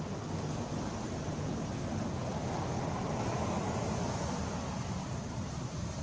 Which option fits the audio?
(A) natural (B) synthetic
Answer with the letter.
A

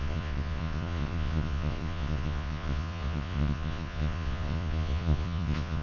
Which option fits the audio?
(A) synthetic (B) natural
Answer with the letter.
A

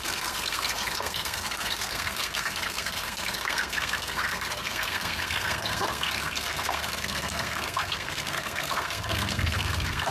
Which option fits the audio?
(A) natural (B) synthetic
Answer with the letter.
B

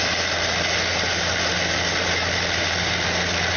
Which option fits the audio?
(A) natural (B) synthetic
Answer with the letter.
A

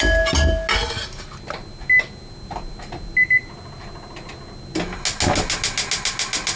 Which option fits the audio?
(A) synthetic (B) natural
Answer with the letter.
B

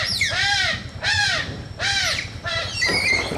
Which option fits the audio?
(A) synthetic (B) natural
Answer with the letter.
A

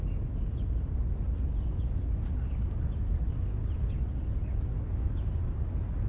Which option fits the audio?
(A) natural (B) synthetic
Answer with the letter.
A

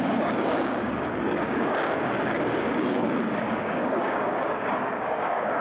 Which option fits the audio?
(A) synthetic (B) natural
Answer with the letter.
A